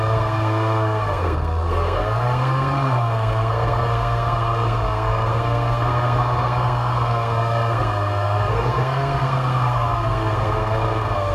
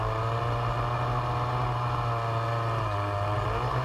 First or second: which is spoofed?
first